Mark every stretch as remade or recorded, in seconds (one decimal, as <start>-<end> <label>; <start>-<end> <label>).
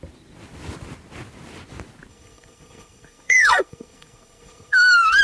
0.0-2.1 recorded; 2.1-5.2 remade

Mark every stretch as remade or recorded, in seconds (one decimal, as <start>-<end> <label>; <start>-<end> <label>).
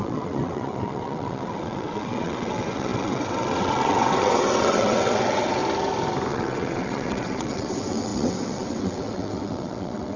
0.0-5.6 remade; 5.6-6.3 recorded; 6.3-10.2 remade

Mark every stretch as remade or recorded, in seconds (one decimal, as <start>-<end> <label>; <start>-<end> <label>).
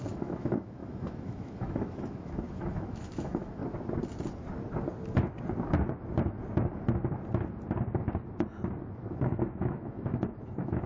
0.0-3.6 remade; 3.6-8.9 recorded; 8.9-10.9 remade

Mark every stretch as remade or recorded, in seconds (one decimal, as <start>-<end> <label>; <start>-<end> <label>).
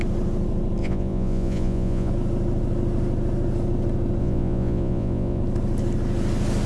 0.0-0.8 recorded; 0.8-2.1 remade; 2.1-4.2 recorded; 4.2-5.4 remade; 5.4-6.7 recorded